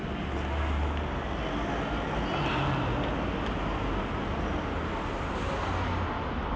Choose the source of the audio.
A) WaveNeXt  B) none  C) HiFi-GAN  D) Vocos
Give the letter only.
B